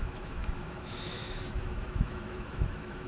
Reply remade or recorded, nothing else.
remade